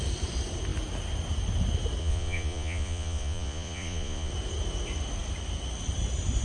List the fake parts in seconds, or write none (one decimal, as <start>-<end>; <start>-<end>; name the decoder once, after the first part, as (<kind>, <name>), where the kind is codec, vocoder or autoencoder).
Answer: 2.0-4.3 (vocoder, Vocos)